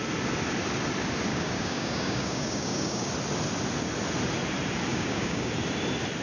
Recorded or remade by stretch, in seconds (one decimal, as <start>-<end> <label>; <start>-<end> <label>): 0.0-1.3 recorded; 1.3-3.1 remade; 3.1-4.9 recorded; 4.9-5.5 remade; 5.5-6.2 recorded